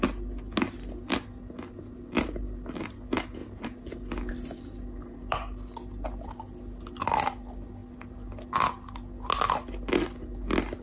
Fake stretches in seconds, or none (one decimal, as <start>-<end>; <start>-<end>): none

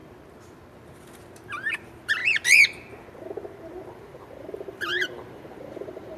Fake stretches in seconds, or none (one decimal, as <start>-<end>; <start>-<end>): 1.7-2.2; 3.9-6.2

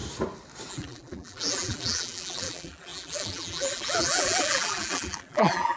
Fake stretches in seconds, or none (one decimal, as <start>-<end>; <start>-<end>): 0.7-5.8